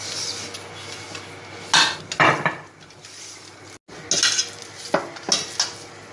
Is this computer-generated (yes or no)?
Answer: no